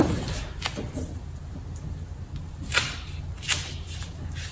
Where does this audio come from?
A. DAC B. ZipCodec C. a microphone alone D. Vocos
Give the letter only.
C